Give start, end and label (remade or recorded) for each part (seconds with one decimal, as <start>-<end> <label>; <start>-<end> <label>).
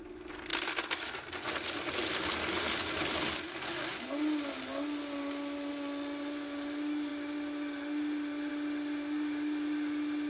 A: 0.0-10.3 recorded